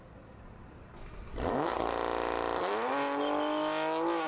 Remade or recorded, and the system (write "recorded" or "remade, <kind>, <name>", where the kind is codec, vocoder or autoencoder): recorded